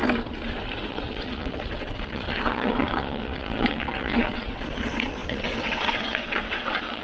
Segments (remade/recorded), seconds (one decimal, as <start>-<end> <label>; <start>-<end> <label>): 0.0-0.9 recorded; 0.9-7.0 remade